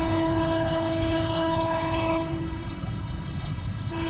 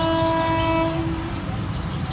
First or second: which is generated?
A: first